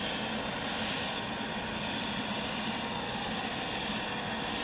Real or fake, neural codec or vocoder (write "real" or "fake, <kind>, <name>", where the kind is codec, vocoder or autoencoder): real